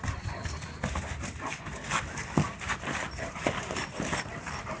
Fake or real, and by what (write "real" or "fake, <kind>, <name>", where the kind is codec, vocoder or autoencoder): real